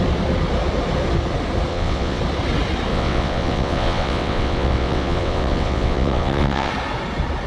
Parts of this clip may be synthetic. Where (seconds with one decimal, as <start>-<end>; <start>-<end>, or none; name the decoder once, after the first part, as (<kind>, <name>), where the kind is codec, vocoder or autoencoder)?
1.7-2.2 (vocoder, WaveNeXt); 2.9-6.7